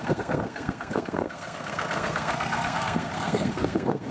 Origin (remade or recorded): remade